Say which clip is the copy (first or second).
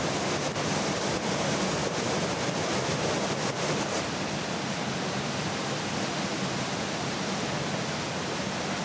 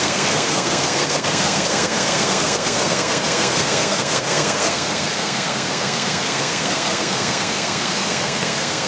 second